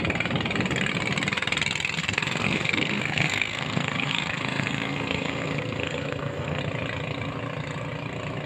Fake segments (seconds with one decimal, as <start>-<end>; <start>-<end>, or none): 2.0-6.6